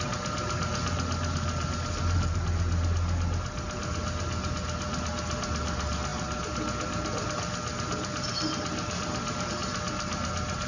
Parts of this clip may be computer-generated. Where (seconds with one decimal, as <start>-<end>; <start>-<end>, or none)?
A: none

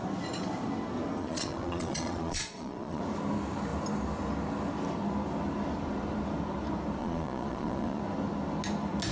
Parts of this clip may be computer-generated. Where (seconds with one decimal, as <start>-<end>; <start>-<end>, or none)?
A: 1.2-3.0; 7.0-8.0

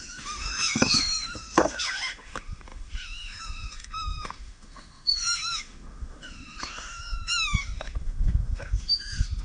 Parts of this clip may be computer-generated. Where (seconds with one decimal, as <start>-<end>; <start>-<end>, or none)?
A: 0.0-9.4

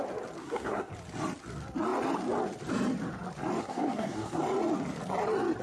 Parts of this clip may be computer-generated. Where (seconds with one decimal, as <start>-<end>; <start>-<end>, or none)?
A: 0.4-0.9; 3.6-4.4

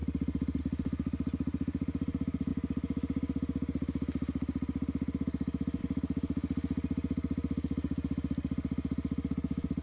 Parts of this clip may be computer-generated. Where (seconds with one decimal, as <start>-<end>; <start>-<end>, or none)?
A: none

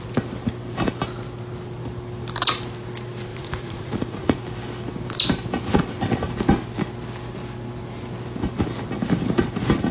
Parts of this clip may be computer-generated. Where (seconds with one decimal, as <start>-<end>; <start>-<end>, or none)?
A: 3.3-4.4

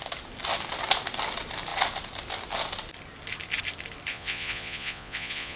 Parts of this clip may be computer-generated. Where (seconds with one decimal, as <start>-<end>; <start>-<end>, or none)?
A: 4.1-5.6

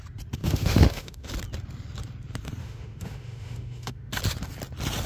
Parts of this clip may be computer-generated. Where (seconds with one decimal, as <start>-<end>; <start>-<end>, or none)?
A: 0.4-1.3; 2.6-4.1